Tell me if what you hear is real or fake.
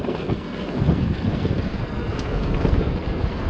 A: fake